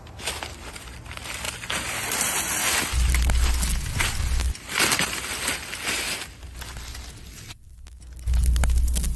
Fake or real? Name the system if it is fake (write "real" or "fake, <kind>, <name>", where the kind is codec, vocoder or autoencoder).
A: real